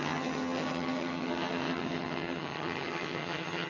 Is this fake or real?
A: fake